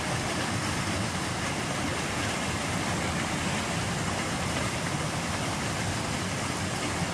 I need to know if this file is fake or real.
fake